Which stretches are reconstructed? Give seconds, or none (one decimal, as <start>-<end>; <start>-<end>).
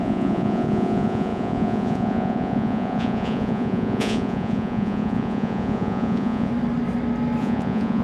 0.0-6.5; 7.4-8.0